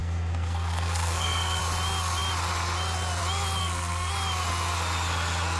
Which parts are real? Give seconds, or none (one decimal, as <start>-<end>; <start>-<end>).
1.6-3.6; 4.1-5.6